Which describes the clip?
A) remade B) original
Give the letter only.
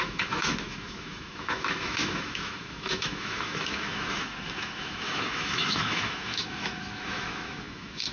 A